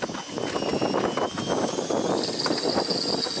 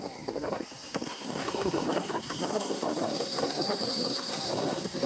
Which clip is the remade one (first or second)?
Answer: second